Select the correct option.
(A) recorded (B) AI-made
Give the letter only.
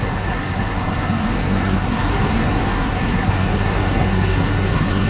B